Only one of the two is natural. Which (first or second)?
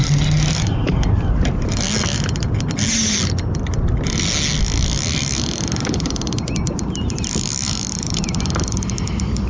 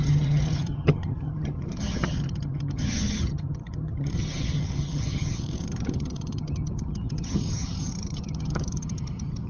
first